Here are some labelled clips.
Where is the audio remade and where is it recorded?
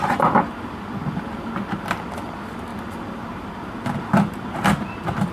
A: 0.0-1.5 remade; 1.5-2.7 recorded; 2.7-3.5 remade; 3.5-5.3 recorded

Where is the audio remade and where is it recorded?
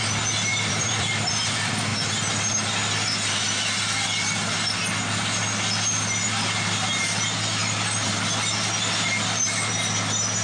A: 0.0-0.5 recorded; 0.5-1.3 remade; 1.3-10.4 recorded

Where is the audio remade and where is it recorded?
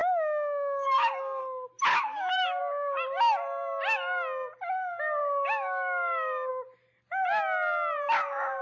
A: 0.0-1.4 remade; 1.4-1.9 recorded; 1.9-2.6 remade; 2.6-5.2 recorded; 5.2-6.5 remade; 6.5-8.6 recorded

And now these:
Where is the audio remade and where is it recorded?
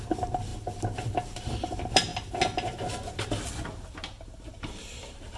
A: 0.0-0.5 remade; 0.5-1.4 recorded; 1.4-2.1 remade; 2.1-4.6 recorded; 4.6-5.4 remade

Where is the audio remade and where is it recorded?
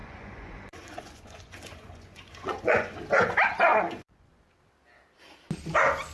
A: 0.0-3.0 remade; 3.0-3.7 recorded; 3.7-4.6 remade; 4.6-6.1 recorded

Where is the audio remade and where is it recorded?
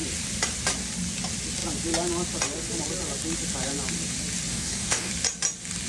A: 0.0-4.5 recorded; 4.5-5.1 remade; 5.1-5.9 recorded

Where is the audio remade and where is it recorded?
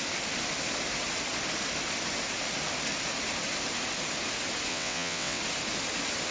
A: 0.0-4.7 recorded; 4.7-5.4 remade; 5.4-6.3 recorded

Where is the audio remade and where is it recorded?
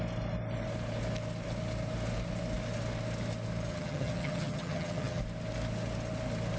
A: 0.0-3.7 recorded; 3.7-5.2 remade; 5.2-6.6 recorded